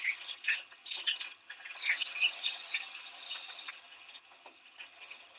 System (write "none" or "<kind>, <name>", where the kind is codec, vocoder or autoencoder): vocoder, HiFi-GAN